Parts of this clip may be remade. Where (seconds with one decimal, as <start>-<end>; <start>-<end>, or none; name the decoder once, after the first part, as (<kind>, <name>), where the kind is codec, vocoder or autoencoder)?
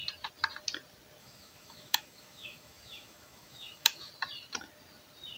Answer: 1.2-4.1 (autoencoder, DAC-VAE)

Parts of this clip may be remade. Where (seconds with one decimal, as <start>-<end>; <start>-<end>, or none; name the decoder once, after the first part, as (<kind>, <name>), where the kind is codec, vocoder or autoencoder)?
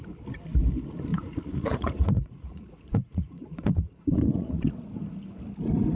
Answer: 1.1-4.7 (vocoder, Vocos)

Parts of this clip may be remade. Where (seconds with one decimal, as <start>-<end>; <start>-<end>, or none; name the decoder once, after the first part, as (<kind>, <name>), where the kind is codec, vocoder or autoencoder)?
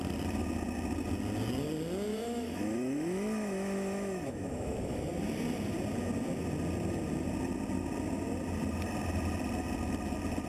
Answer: 2.1-5.0 (autoencoder, DAC-VAE)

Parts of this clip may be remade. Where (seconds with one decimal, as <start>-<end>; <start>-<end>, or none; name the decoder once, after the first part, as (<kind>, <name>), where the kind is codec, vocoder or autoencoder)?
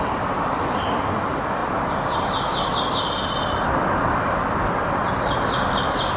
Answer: none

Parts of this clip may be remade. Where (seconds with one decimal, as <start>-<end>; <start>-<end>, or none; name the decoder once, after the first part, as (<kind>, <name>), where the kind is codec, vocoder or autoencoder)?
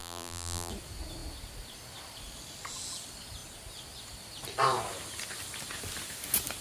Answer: 0.0-0.7 (vocoder, BigVGAN v2)